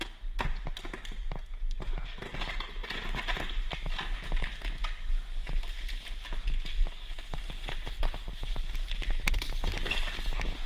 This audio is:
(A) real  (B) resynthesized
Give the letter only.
A